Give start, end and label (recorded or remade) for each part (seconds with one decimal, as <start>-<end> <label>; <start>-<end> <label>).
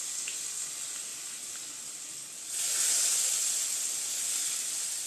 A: 0.0-5.1 recorded